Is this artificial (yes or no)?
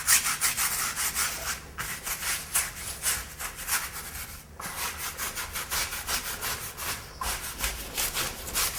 no